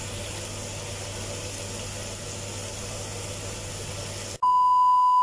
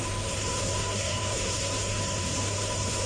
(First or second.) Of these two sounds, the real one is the first